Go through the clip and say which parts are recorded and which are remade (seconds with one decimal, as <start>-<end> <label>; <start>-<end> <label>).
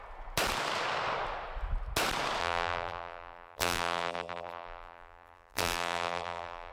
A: 0.0-2.4 recorded; 2.4-6.7 remade